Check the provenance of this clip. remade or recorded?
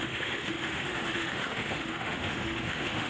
remade